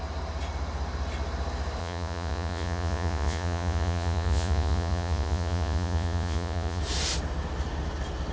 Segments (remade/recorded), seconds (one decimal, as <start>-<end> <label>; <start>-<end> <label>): 0.0-1.8 recorded; 1.8-6.8 remade; 6.8-8.3 recorded